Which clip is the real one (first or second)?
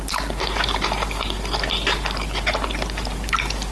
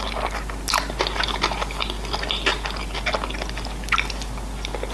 second